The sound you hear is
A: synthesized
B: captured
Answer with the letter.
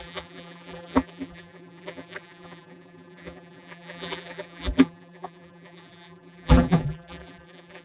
A